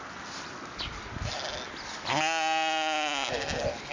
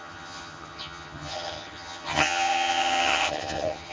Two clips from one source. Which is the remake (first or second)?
second